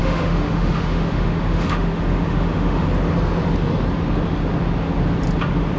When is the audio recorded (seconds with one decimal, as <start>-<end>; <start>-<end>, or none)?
2.8-5.8

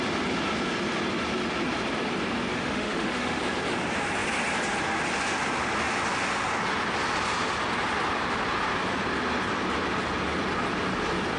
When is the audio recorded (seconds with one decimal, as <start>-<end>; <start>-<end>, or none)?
0.0-2.5; 3.4-11.4

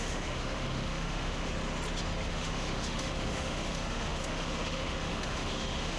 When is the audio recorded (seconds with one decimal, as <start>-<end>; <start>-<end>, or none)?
1.5-2.3

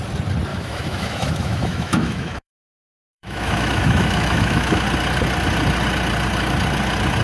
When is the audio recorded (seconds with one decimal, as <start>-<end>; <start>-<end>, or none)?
0.0-0.5; 4.8-7.2

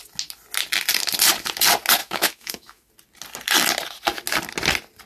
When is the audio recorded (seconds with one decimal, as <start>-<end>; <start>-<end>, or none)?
0.0-2.0; 2.9-5.1

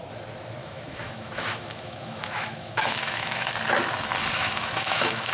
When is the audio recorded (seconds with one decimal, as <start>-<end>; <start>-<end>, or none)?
0.0-0.6; 3.5-4.4